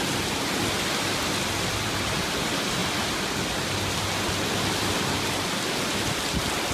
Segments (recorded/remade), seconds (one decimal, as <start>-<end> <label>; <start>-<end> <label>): 0.0-6.7 recorded